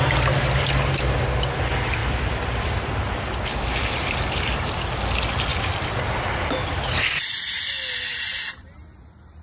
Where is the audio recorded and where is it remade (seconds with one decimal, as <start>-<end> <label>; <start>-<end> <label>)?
0.0-2.0 recorded; 2.0-4.6 remade; 4.6-5.5 recorded; 5.5-7.7 remade; 7.7-8.1 recorded; 8.1-8.7 remade; 8.7-9.4 recorded